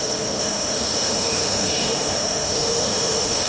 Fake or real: fake